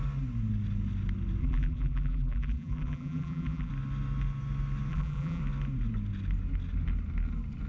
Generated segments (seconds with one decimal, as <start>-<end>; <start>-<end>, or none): 1.4-3.7; 4.9-5.4